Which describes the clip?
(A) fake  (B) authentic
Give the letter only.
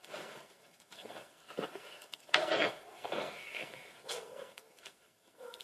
A